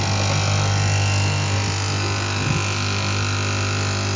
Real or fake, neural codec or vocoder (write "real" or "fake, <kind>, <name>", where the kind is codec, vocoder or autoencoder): real